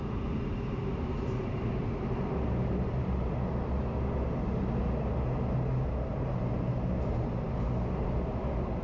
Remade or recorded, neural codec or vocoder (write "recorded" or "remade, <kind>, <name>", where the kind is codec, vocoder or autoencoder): recorded